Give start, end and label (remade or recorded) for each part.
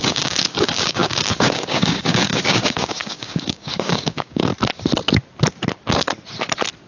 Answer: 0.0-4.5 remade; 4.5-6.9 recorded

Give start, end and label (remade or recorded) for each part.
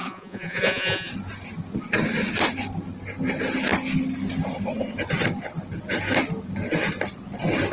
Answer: 0.0-1.1 remade; 1.1-7.7 recorded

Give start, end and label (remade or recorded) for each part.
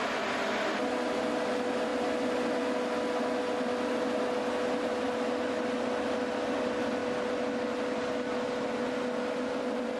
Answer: 0.0-10.0 recorded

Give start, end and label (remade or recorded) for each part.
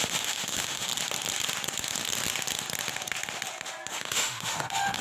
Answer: 0.0-0.9 remade; 0.9-3.9 recorded; 3.9-5.0 remade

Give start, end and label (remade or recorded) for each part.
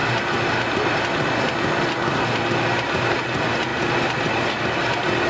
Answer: 0.0-5.3 recorded